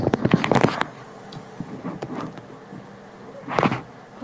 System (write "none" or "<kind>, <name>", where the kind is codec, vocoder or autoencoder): none